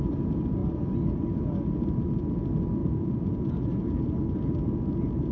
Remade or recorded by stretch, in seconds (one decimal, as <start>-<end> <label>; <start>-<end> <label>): 0.0-2.8 recorded; 2.8-3.8 remade; 3.8-5.3 recorded